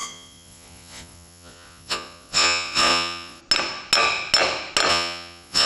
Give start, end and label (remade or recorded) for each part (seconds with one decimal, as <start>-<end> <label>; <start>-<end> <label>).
0.0-3.4 remade; 3.4-4.9 recorded; 4.9-5.7 remade